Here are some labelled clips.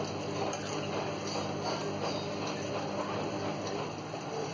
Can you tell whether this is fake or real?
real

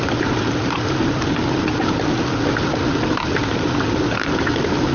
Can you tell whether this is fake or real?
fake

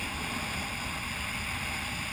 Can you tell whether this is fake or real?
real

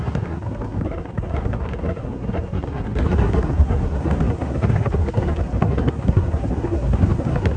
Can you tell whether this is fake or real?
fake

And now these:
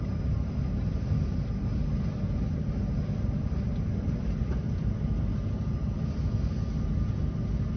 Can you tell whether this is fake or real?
real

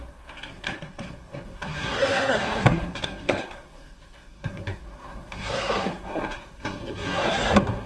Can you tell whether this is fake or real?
fake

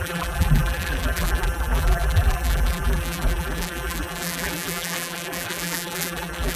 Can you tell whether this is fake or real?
fake